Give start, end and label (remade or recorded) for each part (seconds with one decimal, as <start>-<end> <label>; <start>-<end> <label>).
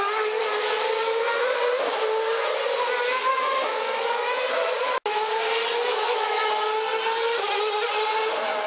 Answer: 0.0-3.3 recorded; 3.3-4.4 remade; 4.4-5.9 recorded; 5.9-6.5 remade; 6.5-8.7 recorded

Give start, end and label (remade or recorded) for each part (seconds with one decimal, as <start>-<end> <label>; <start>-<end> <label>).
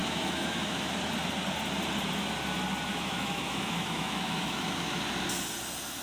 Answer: 0.0-0.9 remade; 0.9-2.9 recorded; 2.9-5.0 remade; 5.0-6.0 recorded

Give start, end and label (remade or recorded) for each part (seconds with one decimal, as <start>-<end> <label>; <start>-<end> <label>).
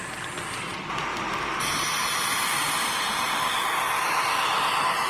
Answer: 0.0-5.1 recorded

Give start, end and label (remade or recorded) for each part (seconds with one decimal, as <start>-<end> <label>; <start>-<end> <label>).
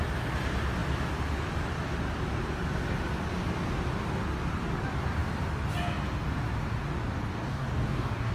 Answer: 0.0-7.3 recorded; 7.3-8.3 remade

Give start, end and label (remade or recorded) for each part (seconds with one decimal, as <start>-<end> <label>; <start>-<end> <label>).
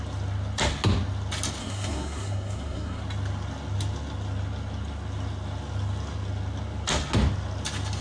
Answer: 0.0-1.6 recorded; 1.6-3.0 remade; 3.0-8.0 recorded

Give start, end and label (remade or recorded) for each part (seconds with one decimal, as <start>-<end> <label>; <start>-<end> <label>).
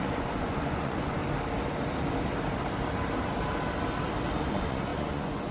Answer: 0.0-1.2 remade; 1.2-4.5 recorded; 4.5-5.5 remade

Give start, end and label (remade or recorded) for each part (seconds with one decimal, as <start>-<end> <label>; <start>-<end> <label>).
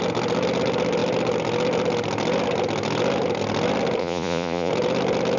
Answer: 0.0-4.0 recorded; 4.0-4.7 remade; 4.7-5.4 recorded